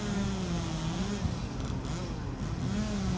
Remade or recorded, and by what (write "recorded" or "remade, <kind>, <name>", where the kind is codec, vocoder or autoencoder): recorded